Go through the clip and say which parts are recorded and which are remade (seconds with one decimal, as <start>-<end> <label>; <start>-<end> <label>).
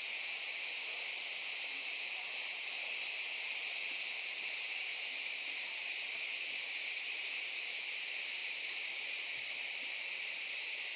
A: 0.0-8.4 recorded; 8.4-10.6 remade; 10.6-11.0 recorded